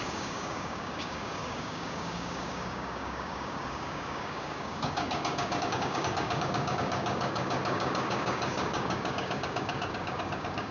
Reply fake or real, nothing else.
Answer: fake